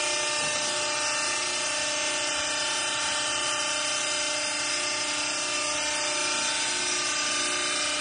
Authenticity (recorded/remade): recorded